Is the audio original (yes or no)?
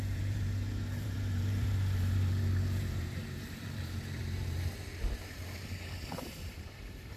no